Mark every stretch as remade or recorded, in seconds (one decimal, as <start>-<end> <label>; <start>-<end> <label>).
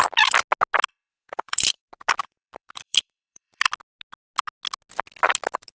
0.0-0.9 recorded; 0.9-1.8 remade; 1.8-2.2 recorded; 2.2-3.7 remade; 3.7-5.7 recorded